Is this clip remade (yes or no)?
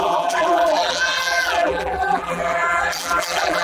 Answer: yes